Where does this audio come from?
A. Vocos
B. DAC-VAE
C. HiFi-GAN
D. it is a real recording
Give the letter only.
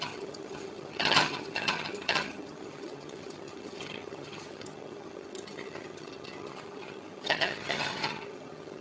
C